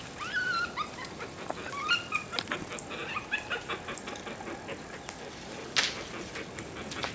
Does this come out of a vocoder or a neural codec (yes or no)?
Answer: no